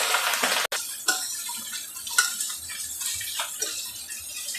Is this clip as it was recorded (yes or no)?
yes